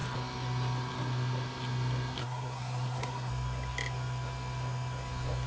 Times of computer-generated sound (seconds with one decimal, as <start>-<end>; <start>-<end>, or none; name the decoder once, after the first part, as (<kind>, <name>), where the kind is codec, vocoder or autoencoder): 2.2-3.3 (codec, SNAC)